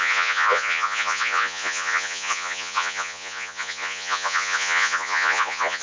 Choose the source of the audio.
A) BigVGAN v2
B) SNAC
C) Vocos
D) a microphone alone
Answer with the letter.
C